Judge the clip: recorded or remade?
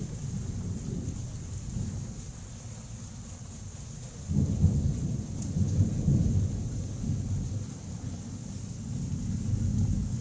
recorded